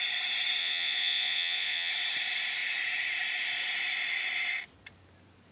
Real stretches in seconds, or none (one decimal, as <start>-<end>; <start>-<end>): 0.0-0.6; 1.9-5.5